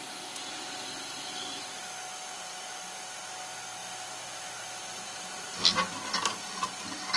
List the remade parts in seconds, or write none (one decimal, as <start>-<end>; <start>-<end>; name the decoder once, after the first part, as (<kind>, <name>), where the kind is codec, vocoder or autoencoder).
none